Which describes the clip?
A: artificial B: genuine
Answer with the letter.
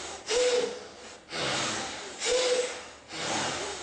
B